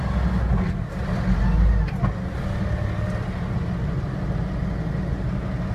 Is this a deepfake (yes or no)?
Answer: no